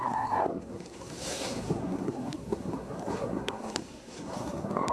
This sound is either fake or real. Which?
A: fake